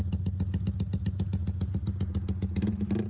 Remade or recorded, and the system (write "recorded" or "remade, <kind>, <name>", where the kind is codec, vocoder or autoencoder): recorded